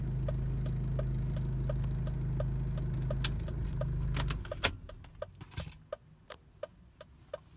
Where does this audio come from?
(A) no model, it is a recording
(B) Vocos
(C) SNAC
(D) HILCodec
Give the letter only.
A